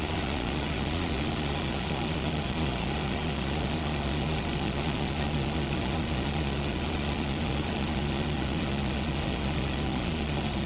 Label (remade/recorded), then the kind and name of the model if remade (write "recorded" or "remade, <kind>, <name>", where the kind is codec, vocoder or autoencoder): remade, vocoder, Vocos